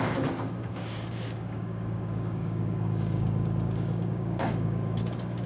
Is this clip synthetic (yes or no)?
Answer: yes